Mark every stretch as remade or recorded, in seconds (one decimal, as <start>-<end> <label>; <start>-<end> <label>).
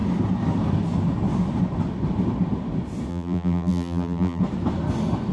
0.0-3.1 recorded; 3.1-4.4 remade; 4.4-5.3 recorded